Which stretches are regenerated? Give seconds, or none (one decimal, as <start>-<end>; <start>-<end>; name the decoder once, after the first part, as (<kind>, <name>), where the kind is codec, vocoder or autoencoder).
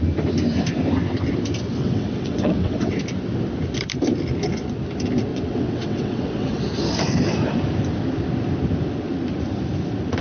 1.8-3.0 (vocoder, WaveNeXt); 5.3-6.6